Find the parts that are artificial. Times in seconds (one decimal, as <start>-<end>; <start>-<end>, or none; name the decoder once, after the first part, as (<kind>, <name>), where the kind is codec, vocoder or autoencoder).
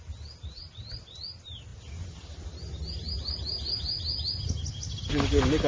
none